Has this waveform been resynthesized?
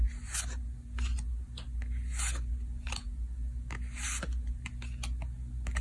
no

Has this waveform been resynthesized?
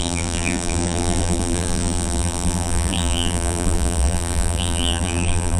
yes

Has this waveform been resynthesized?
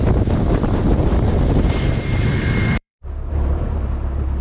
yes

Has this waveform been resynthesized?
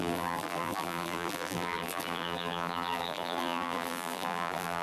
yes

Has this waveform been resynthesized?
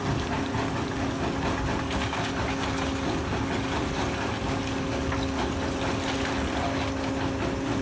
no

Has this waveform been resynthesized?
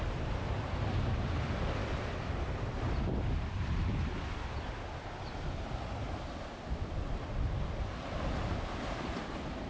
yes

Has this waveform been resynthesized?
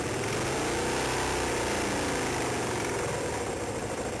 no